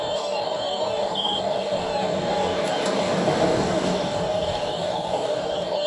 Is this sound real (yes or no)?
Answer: no